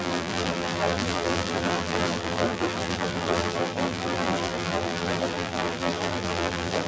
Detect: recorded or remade remade